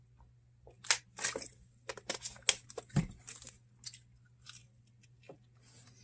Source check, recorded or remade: recorded